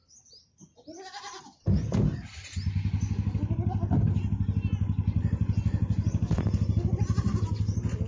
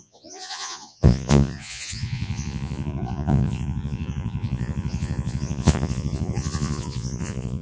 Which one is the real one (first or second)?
first